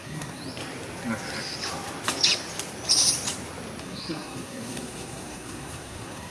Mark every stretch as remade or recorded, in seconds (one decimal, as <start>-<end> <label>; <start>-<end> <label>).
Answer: 0.0-0.4 remade; 0.4-3.8 recorded; 3.8-6.3 remade